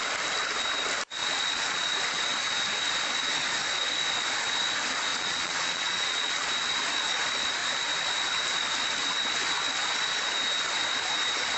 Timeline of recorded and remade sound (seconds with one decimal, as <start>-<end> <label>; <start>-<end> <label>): 0.0-1.2 recorded; 1.2-1.9 remade; 1.9-5.1 recorded; 5.1-6.5 remade; 6.5-11.6 recorded